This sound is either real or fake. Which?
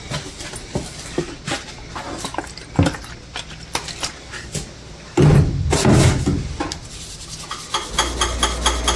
real